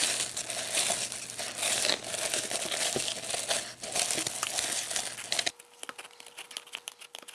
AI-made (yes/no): no